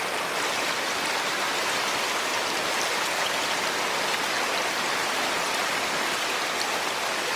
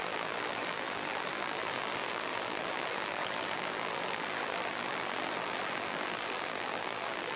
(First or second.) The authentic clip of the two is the first